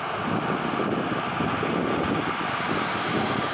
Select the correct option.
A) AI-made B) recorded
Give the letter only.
B